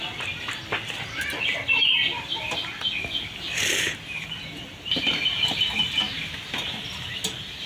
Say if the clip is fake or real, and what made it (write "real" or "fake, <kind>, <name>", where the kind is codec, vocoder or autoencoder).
real